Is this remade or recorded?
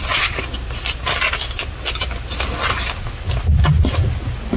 recorded